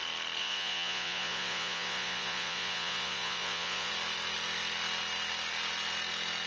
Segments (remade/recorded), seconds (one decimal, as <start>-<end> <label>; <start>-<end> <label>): 0.0-0.4 recorded; 0.4-3.9 remade; 3.9-6.5 recorded